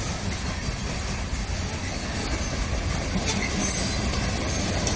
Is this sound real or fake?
real